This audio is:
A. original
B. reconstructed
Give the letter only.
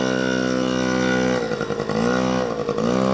A